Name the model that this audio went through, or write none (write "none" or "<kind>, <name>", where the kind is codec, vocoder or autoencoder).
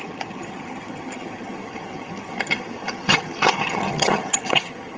vocoder, HiFi-GAN